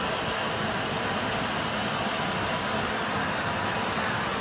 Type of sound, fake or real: real